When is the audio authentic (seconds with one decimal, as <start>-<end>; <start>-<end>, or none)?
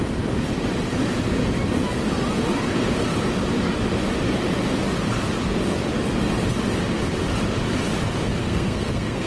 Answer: 0.0-8.4